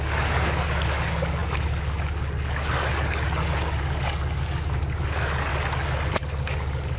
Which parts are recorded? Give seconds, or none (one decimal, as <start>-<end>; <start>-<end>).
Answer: 5.5-6.1